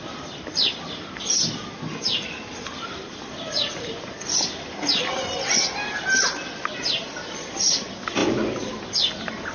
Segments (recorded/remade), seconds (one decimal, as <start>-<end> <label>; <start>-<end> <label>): 0.0-8.2 recorded; 8.2-8.8 remade; 8.8-9.5 recorded